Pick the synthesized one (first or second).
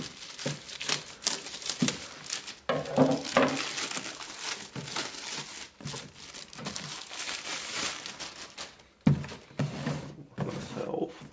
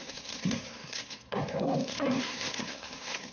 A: second